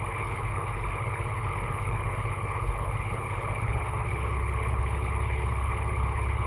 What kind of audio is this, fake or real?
fake